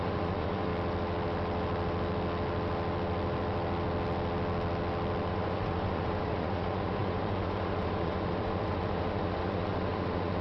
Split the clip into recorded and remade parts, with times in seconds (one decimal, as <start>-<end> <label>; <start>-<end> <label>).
0.0-0.7 remade; 0.7-5.3 recorded; 5.3-10.4 remade